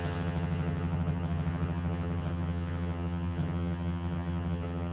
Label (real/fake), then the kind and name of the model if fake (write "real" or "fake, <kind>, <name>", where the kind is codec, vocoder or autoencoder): fake, vocoder, HiFi-GAN